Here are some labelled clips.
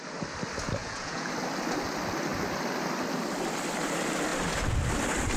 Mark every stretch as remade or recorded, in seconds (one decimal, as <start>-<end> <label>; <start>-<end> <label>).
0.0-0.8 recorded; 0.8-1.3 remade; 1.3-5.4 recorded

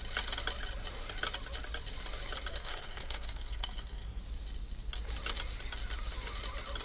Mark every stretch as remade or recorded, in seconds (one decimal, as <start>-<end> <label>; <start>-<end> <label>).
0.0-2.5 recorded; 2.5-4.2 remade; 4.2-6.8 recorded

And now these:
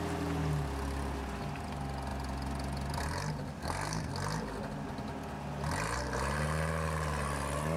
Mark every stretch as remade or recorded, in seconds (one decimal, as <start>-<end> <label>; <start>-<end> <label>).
0.0-3.5 recorded; 3.5-4.1 remade; 4.1-7.8 recorded